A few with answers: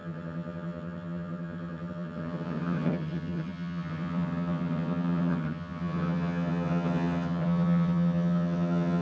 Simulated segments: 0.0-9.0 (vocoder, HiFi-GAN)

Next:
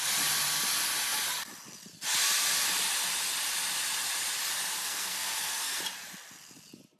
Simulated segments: 4.8-5.8 (codec, SNAC)

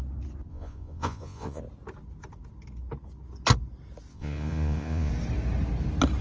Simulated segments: 0.5-1.6 (vocoder, Vocos); 4.1-5.1